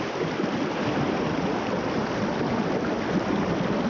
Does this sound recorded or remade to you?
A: recorded